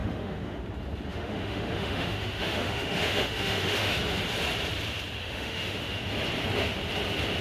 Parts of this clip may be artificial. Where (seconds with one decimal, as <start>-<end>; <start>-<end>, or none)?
0.0-0.6; 1.1-4.0; 5.2-6.0

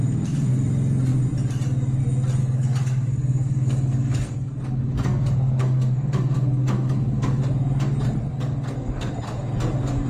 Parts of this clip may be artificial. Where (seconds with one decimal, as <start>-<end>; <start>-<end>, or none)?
2.4-7.4; 8.2-9.1

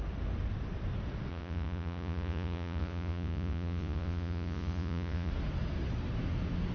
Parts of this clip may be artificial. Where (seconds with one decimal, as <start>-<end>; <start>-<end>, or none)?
1.3-5.3

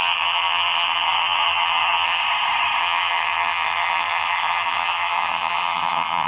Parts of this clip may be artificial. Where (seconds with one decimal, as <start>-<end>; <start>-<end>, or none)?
0.0-2.2; 2.8-6.3

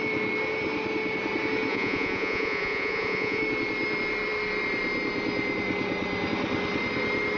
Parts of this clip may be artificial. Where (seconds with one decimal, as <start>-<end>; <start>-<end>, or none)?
1.7-3.4

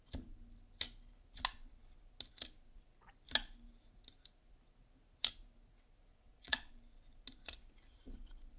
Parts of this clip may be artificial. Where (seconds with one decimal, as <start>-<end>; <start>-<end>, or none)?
6.1-6.7

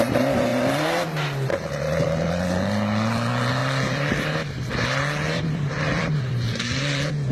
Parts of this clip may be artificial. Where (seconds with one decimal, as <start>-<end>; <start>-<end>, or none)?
3.6-6.6

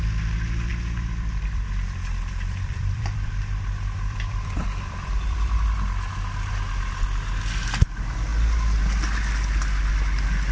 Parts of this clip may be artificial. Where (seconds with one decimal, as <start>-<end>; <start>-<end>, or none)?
0.7-5.6